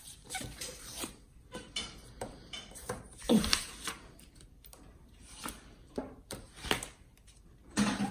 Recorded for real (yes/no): no